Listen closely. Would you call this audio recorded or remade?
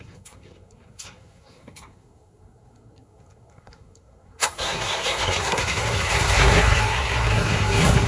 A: remade